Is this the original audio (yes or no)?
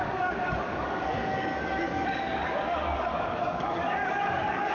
no